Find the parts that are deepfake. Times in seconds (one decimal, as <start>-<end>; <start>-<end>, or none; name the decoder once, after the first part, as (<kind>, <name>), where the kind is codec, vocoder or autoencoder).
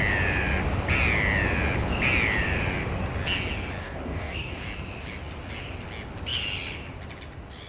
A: 3.8-4.6 (codec, DAC)